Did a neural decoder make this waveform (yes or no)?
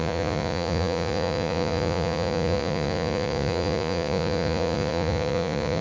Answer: yes